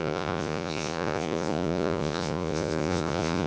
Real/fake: fake